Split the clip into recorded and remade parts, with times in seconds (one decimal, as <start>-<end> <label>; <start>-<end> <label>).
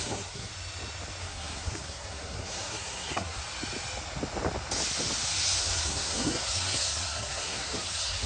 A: 0.0-0.5 remade; 0.5-1.2 recorded; 1.2-3.4 remade; 3.4-5.6 recorded; 5.6-8.3 remade